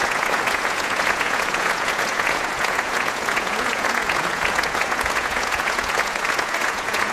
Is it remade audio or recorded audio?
remade